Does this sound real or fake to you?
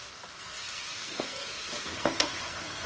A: fake